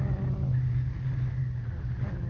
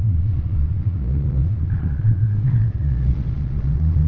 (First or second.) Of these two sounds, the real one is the first